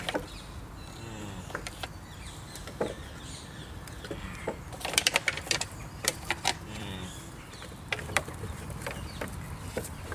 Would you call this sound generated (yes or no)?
yes